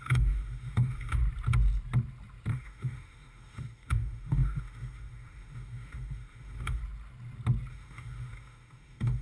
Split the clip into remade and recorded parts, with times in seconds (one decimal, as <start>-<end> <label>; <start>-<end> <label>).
0.0-1.2 remade; 1.2-2.5 recorded; 2.5-6.8 remade; 6.8-7.7 recorded; 7.7-9.2 remade